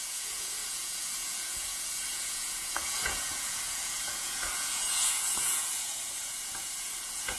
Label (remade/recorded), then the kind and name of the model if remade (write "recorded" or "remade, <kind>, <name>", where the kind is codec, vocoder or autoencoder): remade, vocoder, Vocos